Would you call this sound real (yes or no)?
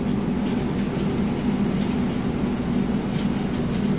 yes